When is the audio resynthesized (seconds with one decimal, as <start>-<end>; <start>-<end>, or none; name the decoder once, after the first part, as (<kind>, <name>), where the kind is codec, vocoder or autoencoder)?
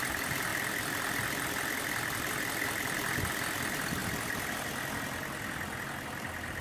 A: none